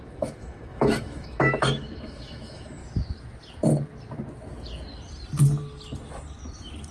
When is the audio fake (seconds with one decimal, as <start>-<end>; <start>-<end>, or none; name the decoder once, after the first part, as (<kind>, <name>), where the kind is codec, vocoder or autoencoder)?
0.0-2.8 (autoencoder, DAC-VAE)